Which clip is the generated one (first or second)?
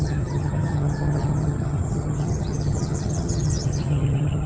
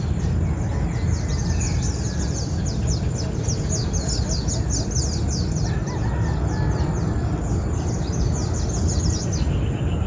first